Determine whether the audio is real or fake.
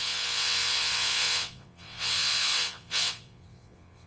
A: fake